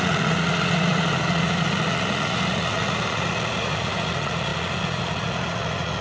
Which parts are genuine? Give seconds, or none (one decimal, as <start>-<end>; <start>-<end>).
none